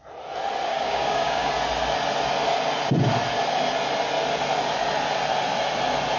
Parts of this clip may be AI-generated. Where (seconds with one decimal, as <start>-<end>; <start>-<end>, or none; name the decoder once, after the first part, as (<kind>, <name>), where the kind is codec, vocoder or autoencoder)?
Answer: 0.7-1.5 (codec, DAC)